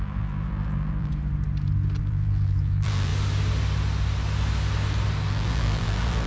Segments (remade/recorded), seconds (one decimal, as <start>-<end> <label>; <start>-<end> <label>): 0.0-1.1 remade; 1.1-2.0 recorded; 2.0-3.1 remade; 3.1-5.3 recorded; 5.3-6.3 remade